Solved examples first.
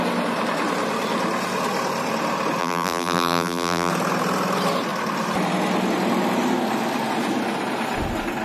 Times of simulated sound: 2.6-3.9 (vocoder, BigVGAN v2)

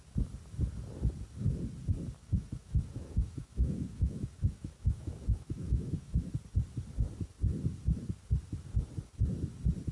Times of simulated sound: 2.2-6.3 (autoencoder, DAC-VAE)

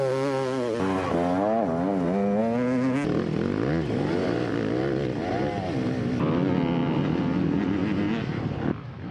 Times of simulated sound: none

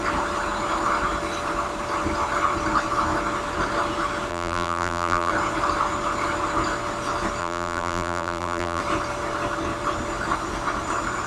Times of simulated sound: 4.3-5.3 (vocoder, BigVGAN v2); 7.4-8.8

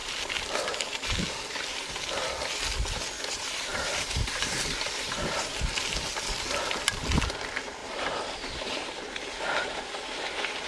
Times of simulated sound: 3.7-5.7 (vocoder, BigVGAN v2); 7.8-9.0

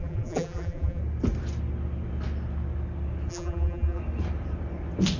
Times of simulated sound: 0.0-1.0 (vocoder, BigVGAN v2); 3.3-4.0

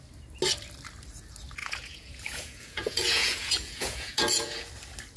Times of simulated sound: 1.6-4.7 (vocoder, Vocos)

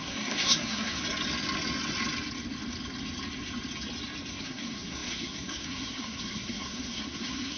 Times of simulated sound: 0.0-1.0 (codec, SNAC); 4.3-7.6